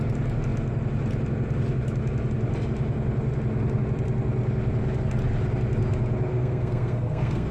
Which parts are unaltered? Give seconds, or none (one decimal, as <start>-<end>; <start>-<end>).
0.0-6.3